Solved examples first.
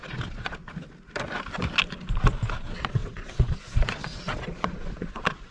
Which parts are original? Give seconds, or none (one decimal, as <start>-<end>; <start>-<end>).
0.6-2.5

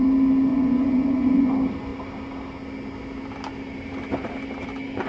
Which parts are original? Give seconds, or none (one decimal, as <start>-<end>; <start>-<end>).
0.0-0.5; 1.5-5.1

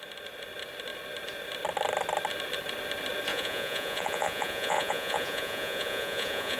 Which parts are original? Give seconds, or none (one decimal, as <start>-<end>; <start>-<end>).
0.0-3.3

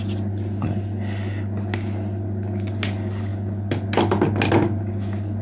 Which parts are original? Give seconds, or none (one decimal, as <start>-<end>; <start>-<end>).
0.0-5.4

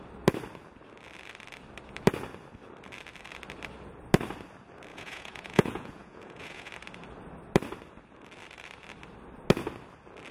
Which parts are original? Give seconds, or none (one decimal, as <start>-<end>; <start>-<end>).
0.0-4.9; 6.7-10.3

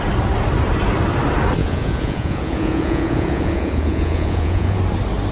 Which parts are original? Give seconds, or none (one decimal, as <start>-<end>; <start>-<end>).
0.0-1.6; 4.8-5.3

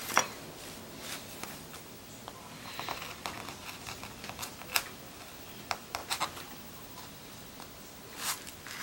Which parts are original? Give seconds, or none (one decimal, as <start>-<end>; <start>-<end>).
0.0-8.8

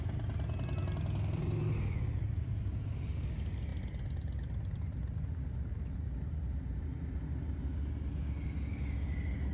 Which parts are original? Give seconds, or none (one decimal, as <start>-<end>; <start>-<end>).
0.0-9.5